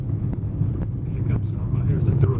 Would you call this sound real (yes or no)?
no